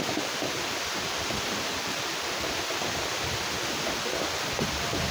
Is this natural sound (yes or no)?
yes